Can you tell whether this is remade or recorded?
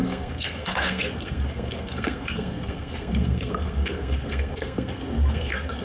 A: remade